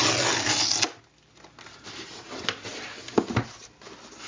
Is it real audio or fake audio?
real